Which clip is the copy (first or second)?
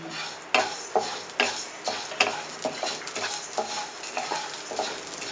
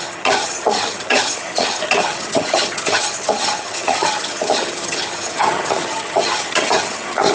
second